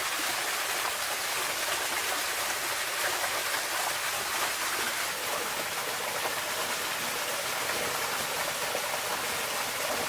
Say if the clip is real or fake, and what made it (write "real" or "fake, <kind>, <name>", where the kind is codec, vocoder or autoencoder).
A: real